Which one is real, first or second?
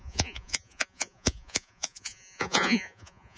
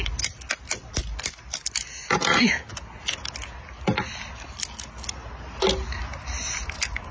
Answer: second